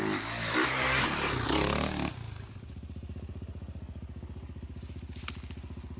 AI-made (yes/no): no